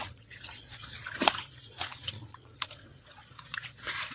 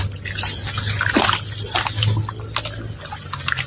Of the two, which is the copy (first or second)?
first